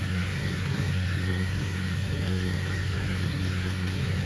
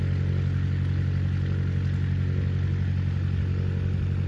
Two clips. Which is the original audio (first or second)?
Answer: second